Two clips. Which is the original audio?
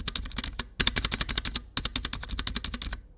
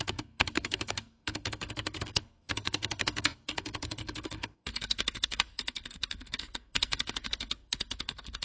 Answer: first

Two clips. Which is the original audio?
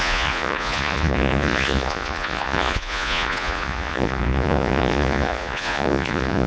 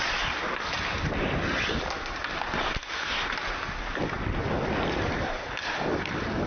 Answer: second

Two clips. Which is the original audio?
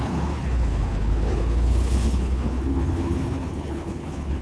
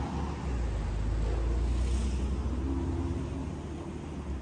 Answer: second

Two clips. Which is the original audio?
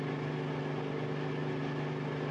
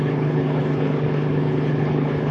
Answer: first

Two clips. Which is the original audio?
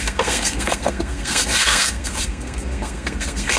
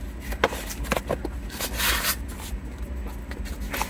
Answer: second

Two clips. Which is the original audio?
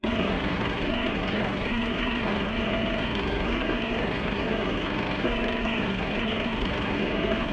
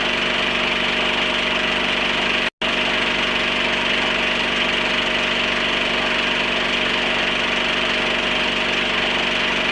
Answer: second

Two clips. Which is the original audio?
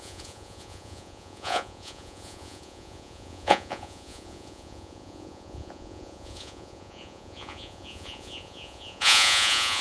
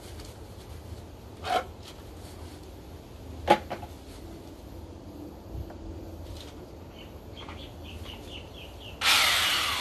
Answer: second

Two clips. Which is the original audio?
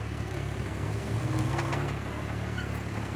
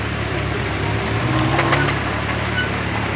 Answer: second